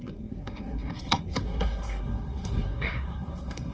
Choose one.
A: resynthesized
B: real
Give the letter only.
A